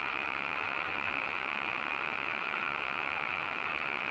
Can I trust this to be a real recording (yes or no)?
no